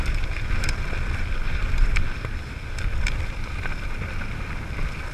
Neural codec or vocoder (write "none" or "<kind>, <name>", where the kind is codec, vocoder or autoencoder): none